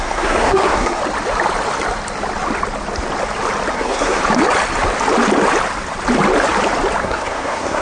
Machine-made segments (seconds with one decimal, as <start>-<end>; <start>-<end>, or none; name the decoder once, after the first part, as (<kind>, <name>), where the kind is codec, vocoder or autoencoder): 0.0-1.0 (codec, SNAC); 3.7-4.2; 7.0-7.8